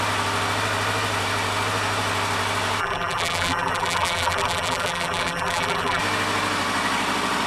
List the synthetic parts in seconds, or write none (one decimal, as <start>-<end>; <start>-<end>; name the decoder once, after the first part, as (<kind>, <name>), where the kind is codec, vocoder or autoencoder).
2.8-6.0 (vocoder, BigVGAN v2)